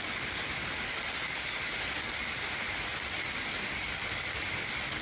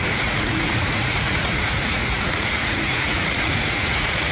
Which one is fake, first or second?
second